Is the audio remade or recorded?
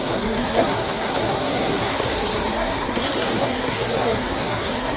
remade